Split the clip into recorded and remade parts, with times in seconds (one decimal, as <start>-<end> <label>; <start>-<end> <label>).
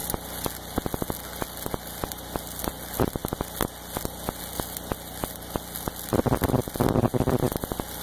0.0-8.0 recorded